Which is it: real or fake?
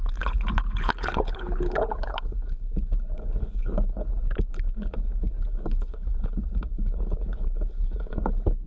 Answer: fake